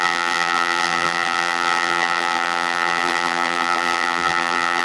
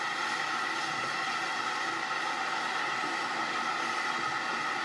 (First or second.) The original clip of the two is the second